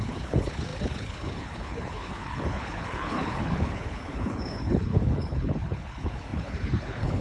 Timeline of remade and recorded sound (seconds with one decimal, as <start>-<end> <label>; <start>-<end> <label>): 0.0-7.2 remade